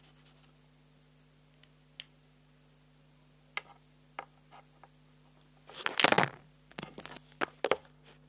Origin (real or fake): real